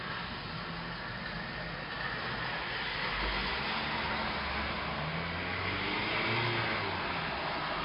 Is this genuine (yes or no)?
yes